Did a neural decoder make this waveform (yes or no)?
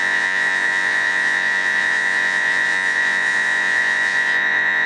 yes